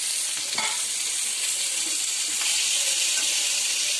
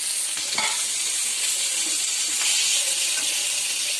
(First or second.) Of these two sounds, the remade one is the first